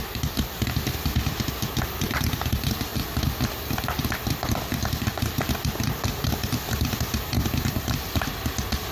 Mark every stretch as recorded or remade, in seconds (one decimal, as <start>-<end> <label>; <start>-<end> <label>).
0.0-8.9 recorded